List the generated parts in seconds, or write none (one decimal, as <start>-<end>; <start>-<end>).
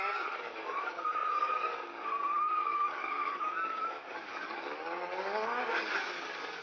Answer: 0.0-6.6